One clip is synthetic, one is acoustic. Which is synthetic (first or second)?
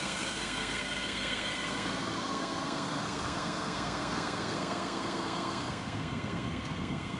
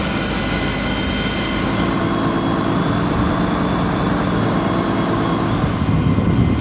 first